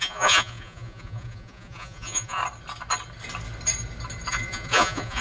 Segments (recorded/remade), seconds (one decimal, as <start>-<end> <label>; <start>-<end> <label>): 0.0-2.4 remade; 2.4-4.3 recorded; 4.3-5.2 remade